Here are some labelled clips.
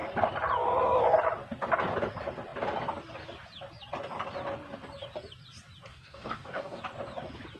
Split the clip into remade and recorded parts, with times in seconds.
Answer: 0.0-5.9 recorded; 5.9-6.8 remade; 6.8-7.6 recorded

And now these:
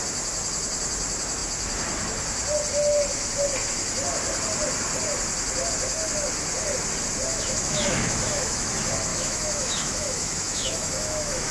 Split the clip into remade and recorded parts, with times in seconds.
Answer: 0.0-7.3 recorded; 7.3-8.7 remade; 8.7-9.1 recorded; 9.1-11.5 remade